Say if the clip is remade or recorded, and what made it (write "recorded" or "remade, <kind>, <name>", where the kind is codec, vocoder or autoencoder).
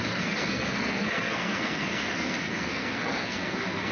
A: remade, codec, SNAC